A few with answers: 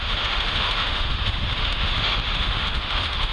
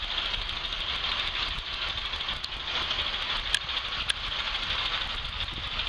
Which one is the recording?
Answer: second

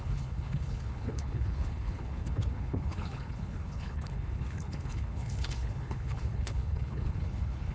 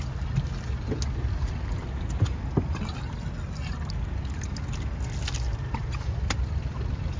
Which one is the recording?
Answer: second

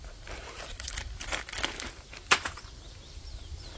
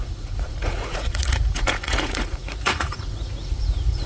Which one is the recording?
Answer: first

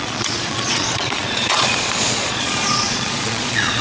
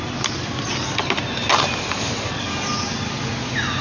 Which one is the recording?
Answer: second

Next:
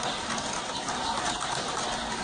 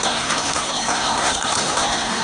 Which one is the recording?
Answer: first